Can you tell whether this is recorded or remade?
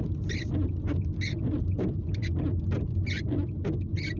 recorded